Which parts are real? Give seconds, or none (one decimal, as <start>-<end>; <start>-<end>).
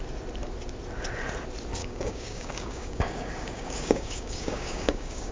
0.0-1.8